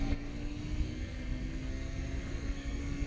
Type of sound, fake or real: fake